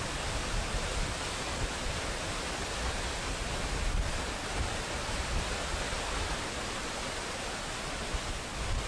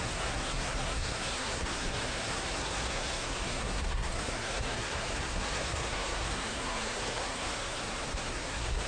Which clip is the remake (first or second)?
second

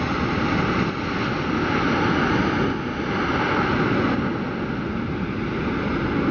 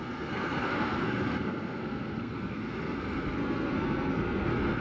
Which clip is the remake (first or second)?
second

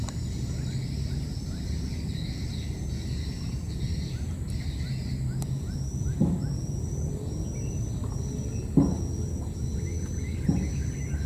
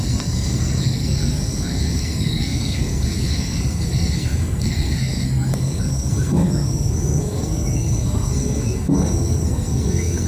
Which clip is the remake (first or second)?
second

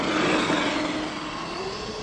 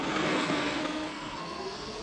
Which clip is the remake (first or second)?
second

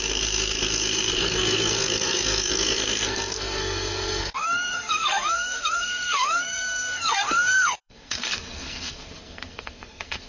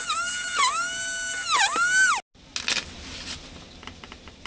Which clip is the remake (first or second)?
first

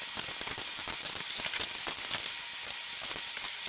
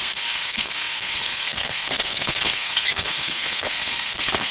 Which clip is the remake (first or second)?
second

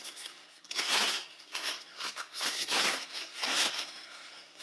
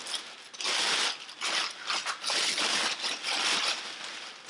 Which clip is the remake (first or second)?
first